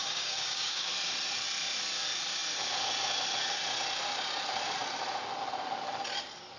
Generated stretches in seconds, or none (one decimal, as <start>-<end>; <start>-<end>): 0.0-0.9